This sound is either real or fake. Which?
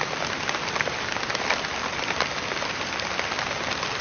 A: fake